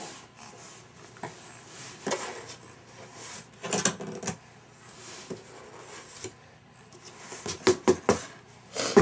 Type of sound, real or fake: real